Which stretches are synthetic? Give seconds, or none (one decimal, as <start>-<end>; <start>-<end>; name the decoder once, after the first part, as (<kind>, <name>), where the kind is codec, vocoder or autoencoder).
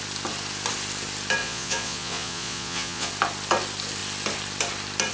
1.4-3.1 (vocoder, Vocos)